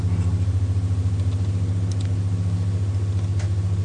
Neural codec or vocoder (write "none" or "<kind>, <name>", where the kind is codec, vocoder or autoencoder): none